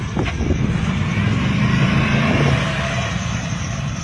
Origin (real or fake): fake